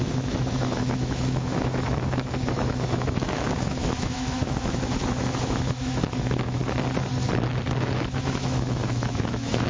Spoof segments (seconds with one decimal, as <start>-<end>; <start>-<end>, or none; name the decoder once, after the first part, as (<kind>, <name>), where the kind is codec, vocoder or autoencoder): 0.0-6.6 (autoencoder, DAC-VAE); 7.8-9.7